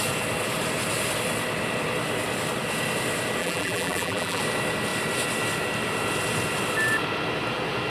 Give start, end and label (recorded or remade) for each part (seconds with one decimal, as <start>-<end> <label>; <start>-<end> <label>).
0.0-3.4 recorded; 3.4-4.4 remade; 4.4-7.9 recorded